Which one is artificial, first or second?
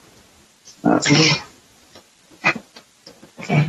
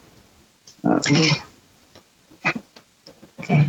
second